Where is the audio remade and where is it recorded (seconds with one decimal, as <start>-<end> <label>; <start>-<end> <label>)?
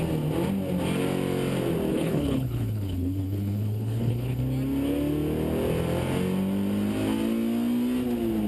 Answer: 0.0-1.9 recorded; 1.9-4.4 remade; 4.4-8.5 recorded